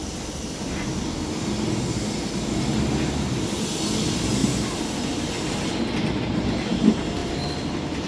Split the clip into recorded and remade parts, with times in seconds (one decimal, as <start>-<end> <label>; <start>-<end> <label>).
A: 0.0-0.9 remade; 0.9-4.4 recorded; 4.4-5.5 remade; 5.5-7.2 recorded; 7.2-8.1 remade